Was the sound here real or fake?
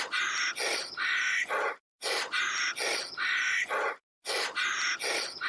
real